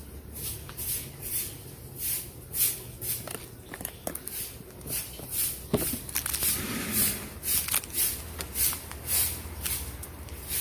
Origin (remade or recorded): recorded